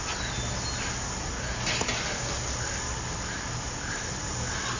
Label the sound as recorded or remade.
recorded